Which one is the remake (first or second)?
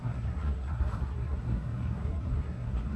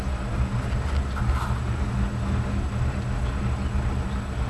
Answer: first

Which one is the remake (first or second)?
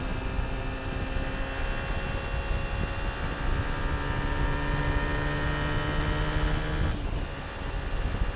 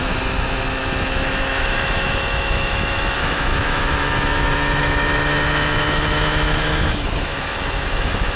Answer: second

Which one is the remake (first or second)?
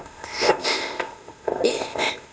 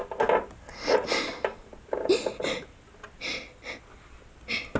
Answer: first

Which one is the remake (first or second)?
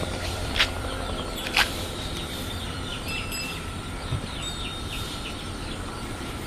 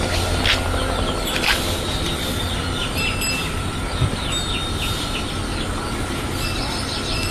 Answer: first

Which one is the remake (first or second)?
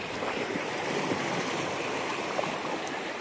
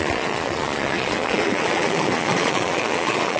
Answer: second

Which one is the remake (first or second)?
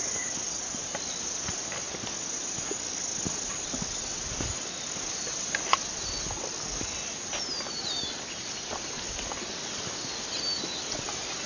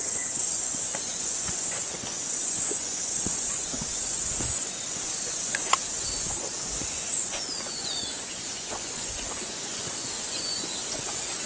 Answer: second